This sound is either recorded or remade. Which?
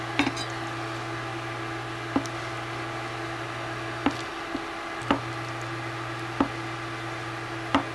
recorded